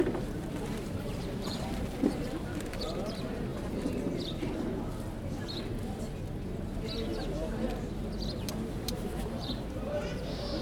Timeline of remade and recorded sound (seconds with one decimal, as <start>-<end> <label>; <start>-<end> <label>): 0.0-3.5 remade; 3.5-8.7 recorded; 8.7-10.6 remade